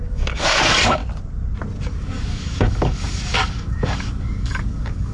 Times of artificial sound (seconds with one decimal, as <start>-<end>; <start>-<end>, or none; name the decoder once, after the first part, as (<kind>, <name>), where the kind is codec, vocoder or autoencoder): 0.0-1.0 (codec, DAC); 1.8-5.1